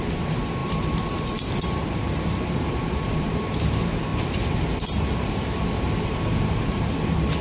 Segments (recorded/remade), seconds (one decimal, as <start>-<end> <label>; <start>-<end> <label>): 0.0-7.4 remade